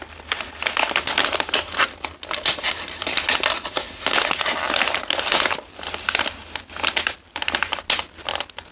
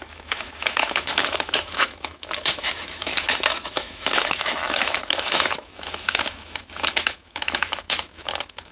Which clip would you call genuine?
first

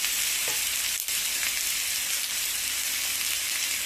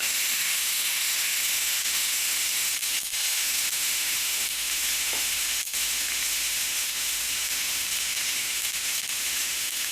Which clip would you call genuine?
first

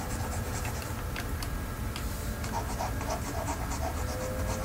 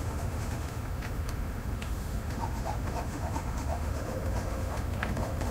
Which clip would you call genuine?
first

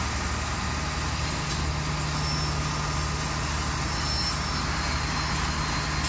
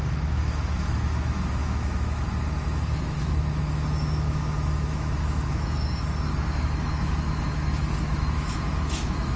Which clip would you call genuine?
first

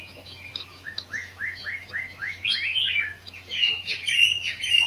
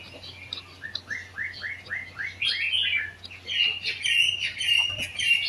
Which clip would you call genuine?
second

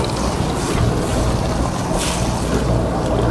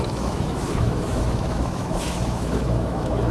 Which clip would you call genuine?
first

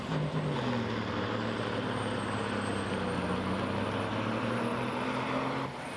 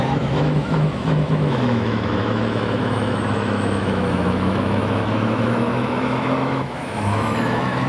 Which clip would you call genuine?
first